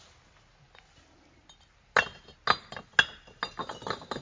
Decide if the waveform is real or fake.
real